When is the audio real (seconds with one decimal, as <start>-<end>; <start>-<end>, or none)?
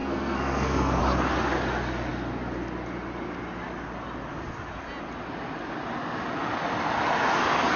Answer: 1.0-7.8